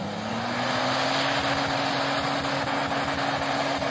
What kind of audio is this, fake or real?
real